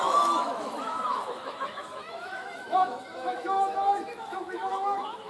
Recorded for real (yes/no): no